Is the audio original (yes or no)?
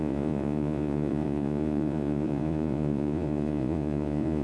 no